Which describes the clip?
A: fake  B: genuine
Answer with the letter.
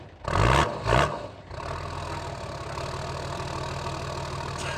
B